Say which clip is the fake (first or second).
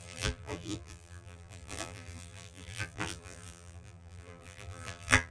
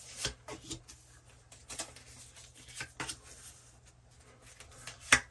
first